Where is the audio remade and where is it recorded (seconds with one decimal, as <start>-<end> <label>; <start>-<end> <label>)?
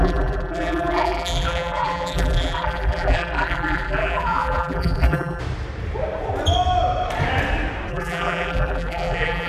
0.0-5.4 remade; 5.4-7.9 recorded; 7.9-9.5 remade